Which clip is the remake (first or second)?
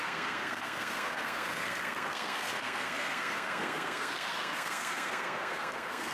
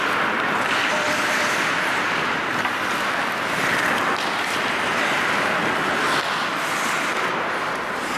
first